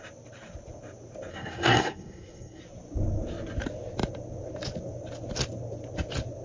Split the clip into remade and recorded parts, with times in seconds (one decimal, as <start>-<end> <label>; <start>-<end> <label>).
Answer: 0.0-1.3 recorded; 1.3-2.6 remade; 2.6-6.4 recorded